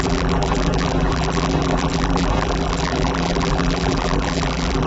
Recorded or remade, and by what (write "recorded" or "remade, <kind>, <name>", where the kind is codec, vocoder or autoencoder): remade, vocoder, BigVGAN v2